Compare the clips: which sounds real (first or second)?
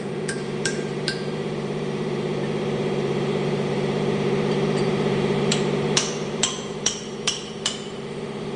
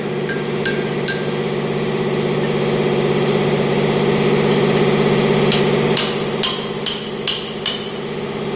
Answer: second